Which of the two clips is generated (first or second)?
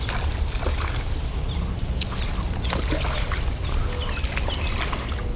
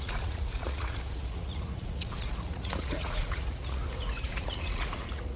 second